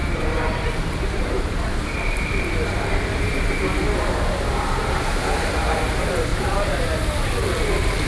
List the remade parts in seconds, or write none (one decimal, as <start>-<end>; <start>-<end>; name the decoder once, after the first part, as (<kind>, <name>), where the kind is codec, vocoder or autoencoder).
0.0-3.5 (vocoder, BigVGAN v2); 6.3-7.0